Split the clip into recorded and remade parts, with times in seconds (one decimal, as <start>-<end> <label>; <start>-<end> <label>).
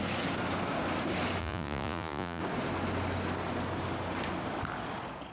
0.0-1.4 recorded; 1.4-2.4 remade; 2.4-5.3 recorded